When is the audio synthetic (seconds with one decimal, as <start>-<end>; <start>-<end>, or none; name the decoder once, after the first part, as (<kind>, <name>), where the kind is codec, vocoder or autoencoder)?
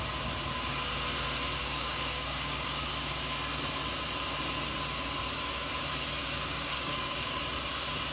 1.6-2.9 (codec, DAC); 6.2-7.4